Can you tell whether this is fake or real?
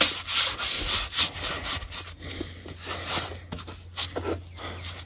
real